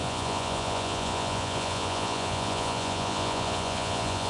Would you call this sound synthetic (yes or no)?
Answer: yes